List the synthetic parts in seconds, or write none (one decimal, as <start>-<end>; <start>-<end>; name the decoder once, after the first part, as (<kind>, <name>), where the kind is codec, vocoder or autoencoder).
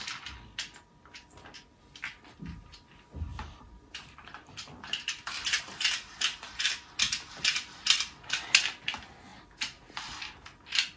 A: 3.3-5.6 (vocoder, BigVGAN v2)